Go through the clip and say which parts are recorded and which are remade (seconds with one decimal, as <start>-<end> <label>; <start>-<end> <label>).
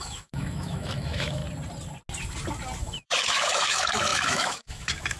0.0-1.4 remade; 1.4-2.8 recorded; 2.8-5.2 remade